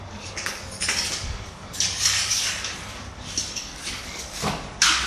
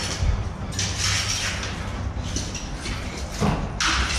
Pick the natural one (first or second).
second